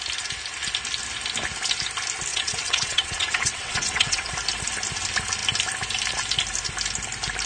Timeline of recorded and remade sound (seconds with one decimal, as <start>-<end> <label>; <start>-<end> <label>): 0.0-2.3 recorded; 2.3-4.3 remade; 4.3-7.5 recorded